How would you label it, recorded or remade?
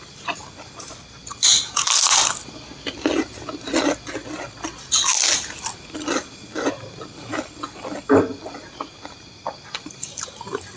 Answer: recorded